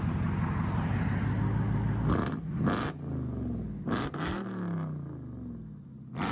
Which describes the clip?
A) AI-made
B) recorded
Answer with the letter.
B